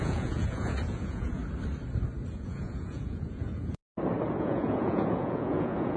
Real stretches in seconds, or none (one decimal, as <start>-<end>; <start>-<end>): 1.4-2.3; 3.8-4.4